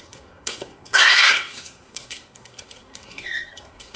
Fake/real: fake